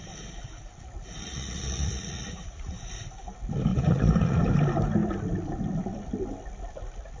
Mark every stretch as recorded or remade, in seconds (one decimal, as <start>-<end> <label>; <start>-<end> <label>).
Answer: 0.0-1.2 recorded; 1.2-2.9 remade; 2.9-3.7 recorded; 3.7-4.4 remade; 4.4-7.2 recorded